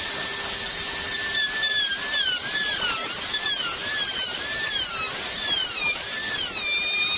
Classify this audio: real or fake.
fake